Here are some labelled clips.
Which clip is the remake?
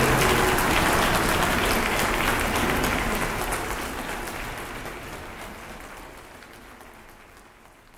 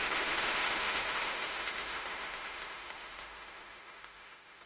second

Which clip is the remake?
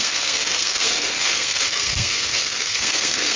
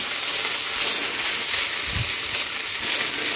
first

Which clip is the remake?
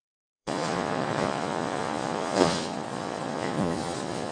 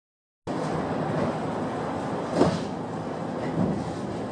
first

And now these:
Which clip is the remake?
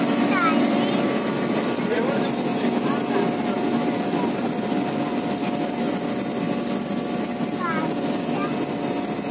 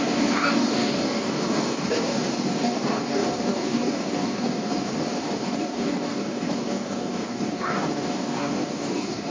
second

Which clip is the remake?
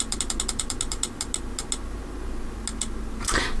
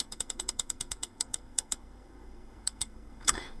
second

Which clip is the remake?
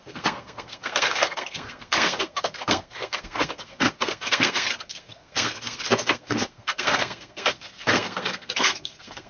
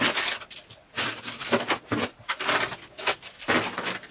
first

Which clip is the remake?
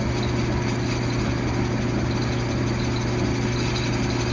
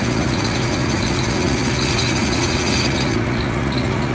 second